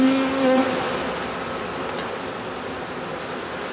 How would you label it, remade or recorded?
recorded